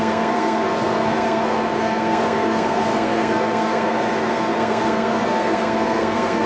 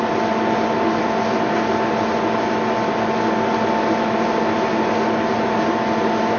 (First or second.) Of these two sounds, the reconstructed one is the first